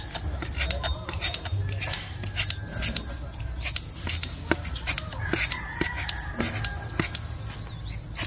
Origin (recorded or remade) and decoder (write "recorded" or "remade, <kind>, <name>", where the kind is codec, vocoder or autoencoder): recorded